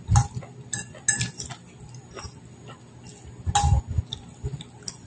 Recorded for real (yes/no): yes